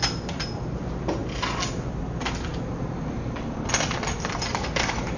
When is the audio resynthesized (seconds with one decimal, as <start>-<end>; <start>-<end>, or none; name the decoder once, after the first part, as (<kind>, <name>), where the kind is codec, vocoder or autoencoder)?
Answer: none